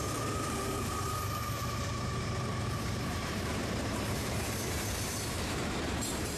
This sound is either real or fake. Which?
fake